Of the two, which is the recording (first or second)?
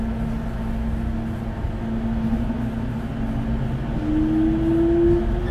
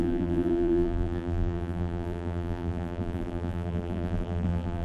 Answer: first